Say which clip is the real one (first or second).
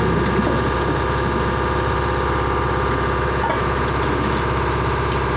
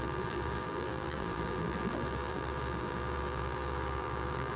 first